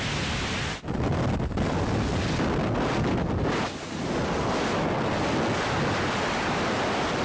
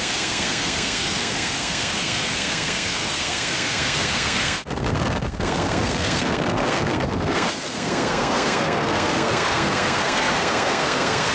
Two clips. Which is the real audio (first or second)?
first